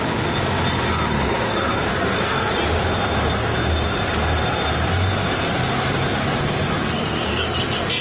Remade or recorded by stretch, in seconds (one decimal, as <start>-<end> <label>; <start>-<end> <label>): 0.0-1.9 recorded; 1.9-2.5 remade; 2.5-6.8 recorded; 6.8-7.6 remade; 7.6-8.0 recorded